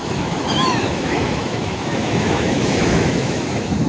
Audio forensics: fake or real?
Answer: fake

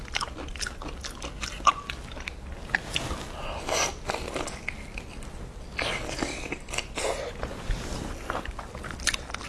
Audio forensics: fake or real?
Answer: real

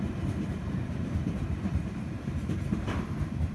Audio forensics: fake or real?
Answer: fake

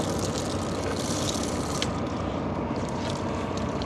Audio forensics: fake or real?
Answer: real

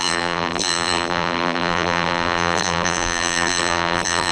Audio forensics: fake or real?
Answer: fake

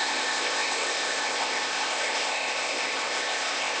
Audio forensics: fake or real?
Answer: fake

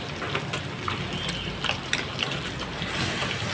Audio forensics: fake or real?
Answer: real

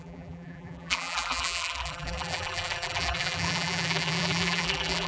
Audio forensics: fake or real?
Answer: fake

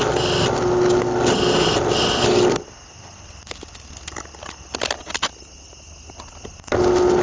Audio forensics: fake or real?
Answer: real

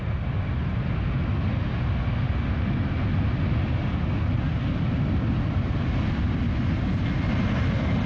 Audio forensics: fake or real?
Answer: real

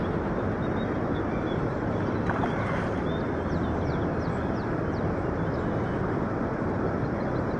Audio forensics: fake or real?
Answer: real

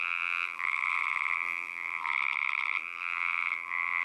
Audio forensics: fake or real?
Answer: fake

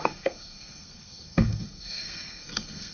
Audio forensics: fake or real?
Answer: fake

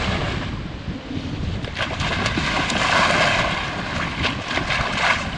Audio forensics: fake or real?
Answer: real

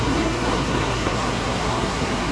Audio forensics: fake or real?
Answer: fake